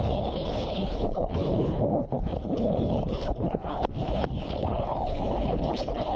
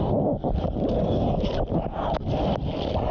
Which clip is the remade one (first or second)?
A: first